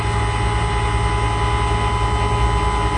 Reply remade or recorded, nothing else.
recorded